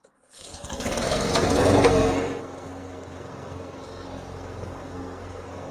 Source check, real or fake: fake